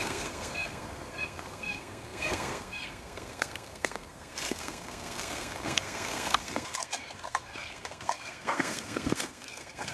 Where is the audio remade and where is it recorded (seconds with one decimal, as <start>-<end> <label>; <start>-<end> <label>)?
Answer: 0.0-9.9 remade